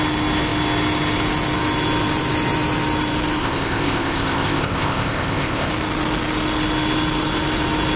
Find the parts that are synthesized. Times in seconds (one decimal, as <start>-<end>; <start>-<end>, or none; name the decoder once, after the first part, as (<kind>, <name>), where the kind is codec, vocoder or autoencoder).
3.4-5.7 (codec, ZipCodec)